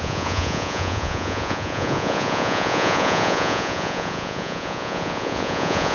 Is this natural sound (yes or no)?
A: no